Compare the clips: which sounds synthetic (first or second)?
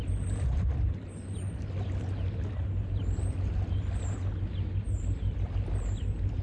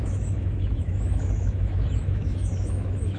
second